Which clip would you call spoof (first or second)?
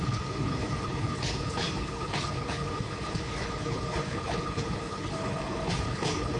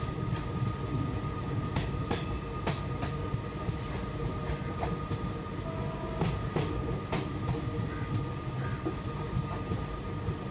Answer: first